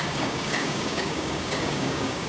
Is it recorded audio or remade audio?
remade